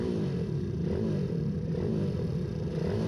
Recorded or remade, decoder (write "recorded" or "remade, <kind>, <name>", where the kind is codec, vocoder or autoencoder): remade, vocoder, BigVGAN v2